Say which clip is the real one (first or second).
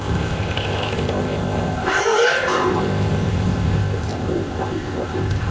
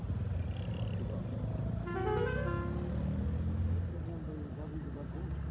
second